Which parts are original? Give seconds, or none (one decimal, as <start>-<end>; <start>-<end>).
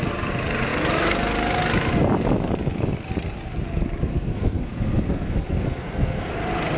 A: 0.0-4.1; 6.3-6.8